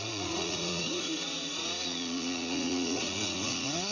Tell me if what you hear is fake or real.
fake